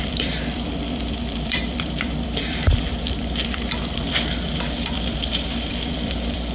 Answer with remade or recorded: remade